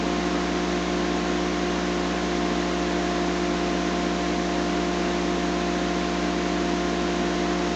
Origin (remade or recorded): recorded